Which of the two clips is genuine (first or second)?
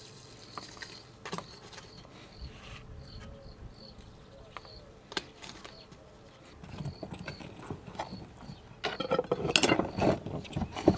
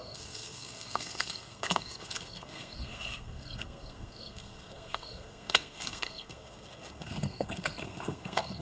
first